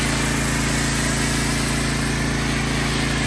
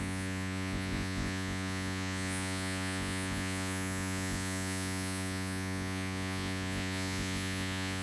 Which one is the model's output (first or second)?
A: second